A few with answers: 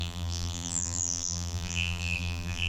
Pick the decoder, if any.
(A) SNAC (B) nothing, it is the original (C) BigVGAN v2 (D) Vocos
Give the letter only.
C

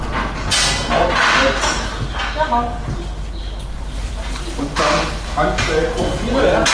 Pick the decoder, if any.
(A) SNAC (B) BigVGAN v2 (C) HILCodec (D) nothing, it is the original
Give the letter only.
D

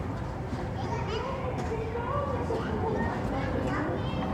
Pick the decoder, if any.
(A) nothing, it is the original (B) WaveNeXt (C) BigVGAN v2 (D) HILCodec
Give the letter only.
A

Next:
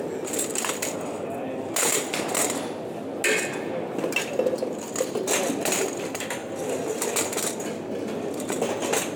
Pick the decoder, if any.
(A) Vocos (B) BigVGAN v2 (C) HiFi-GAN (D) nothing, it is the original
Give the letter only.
D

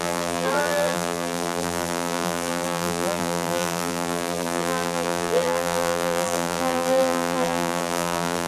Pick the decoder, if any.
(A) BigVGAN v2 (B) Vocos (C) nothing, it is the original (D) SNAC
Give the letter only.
A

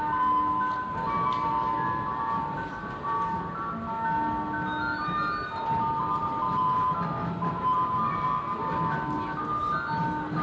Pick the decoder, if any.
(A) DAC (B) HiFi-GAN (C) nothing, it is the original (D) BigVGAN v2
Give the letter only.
C